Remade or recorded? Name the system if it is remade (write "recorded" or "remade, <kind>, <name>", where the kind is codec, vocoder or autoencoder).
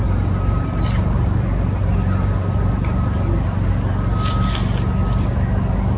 recorded